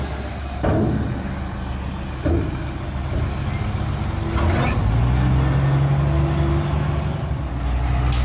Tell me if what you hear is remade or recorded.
recorded